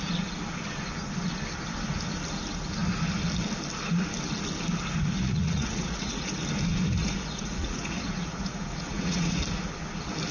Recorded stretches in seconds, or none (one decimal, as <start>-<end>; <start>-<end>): 0.0-5.2; 6.3-7.0; 9.4-10.3